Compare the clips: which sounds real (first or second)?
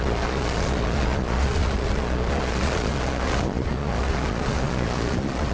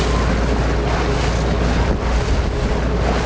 second